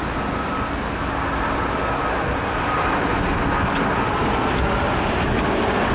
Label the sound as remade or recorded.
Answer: recorded